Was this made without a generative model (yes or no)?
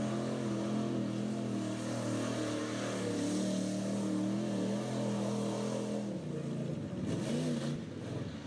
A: yes